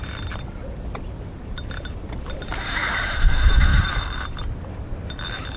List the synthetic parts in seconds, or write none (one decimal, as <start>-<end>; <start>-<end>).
0.0-5.6